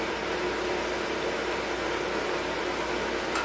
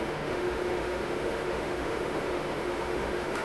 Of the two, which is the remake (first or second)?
second